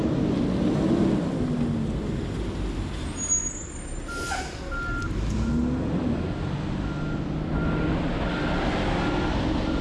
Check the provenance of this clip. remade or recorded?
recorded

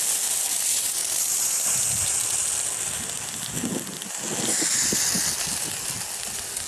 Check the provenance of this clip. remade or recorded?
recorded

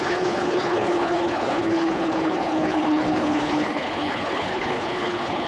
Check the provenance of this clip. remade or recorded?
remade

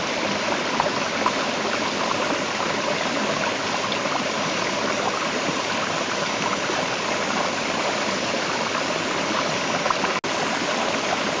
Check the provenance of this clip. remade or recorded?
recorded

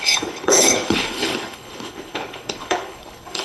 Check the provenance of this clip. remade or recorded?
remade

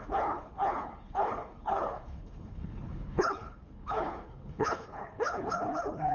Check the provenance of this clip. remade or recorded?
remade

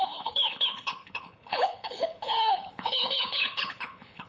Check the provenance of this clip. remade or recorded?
remade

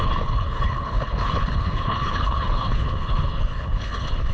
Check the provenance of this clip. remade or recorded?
remade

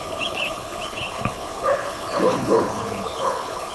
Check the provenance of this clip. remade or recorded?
remade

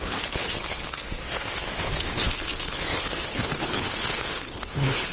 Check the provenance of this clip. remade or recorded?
remade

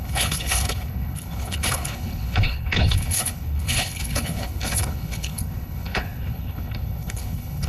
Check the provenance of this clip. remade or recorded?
remade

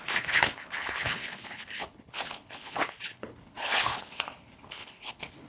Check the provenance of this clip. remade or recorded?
remade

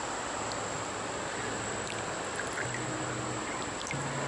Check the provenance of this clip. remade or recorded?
recorded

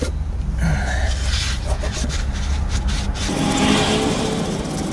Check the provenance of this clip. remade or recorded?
recorded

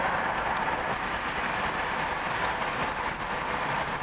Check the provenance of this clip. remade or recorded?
recorded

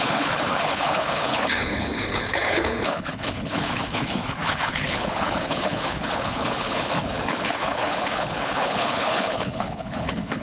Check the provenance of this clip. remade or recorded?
remade